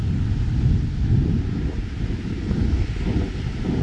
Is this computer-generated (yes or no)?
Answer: no